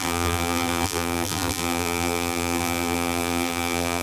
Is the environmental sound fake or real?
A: fake